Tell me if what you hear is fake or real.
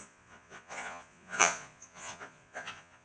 fake